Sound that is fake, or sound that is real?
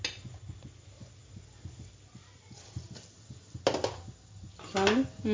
real